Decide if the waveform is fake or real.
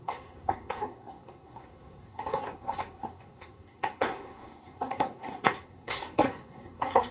fake